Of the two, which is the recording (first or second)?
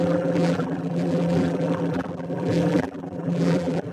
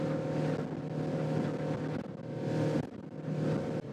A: second